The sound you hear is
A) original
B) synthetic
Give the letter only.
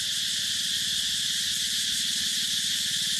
A